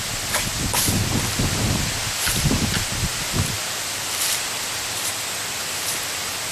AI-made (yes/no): no